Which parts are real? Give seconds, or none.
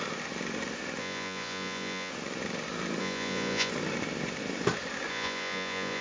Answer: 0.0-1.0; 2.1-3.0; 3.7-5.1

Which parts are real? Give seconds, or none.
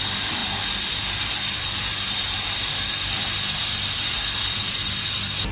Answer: 0.0-5.5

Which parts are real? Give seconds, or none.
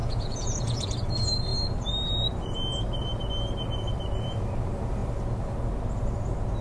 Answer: 0.9-6.6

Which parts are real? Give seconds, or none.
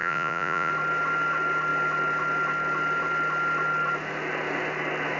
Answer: 0.7-5.2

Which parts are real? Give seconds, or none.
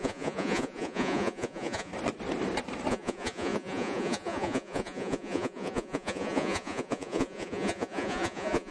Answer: 1.9-2.9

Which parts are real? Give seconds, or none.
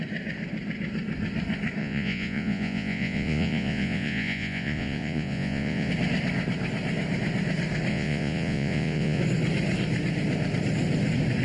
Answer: 0.0-1.8; 5.9-7.9; 9.2-11.4